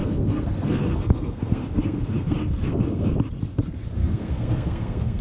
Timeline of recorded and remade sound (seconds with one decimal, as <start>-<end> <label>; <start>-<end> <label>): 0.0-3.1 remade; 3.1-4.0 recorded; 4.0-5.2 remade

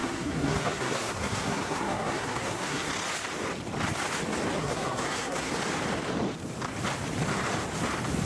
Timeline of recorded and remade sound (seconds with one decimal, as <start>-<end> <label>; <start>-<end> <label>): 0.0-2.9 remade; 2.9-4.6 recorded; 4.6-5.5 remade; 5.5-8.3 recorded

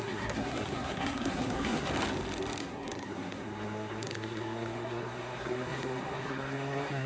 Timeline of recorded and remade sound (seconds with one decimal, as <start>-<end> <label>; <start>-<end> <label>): 0.0-1.9 remade; 1.9-2.6 recorded; 2.6-7.1 remade